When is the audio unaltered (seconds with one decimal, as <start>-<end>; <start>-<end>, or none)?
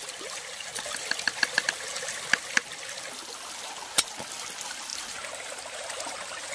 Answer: 1.1-4.9; 5.4-6.5